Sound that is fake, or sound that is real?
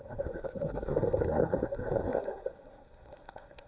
fake